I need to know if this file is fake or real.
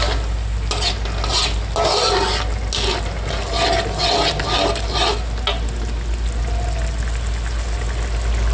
real